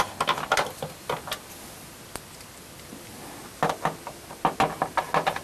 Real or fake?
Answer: real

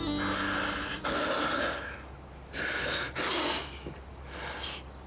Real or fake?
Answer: real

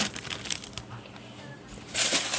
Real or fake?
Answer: real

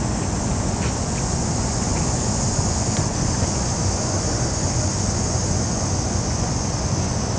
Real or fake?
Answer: fake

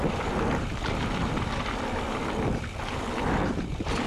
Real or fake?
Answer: fake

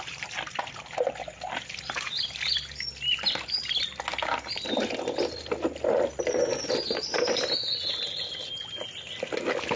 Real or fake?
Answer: real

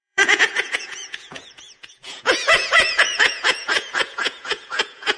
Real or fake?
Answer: fake